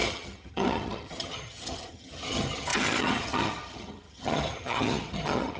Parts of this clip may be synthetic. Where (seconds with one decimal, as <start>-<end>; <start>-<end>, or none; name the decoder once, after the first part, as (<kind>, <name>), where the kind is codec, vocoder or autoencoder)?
0.0-5.6 (vocoder, HiFi-GAN)